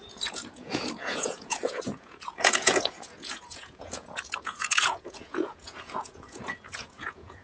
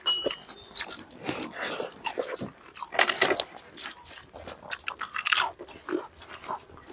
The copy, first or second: first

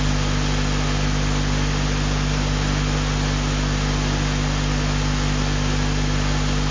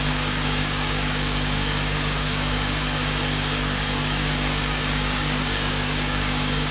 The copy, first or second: second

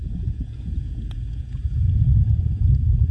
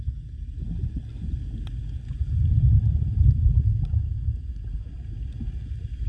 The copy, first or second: first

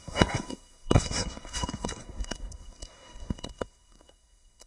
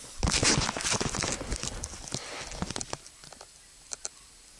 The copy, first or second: first